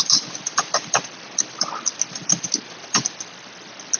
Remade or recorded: recorded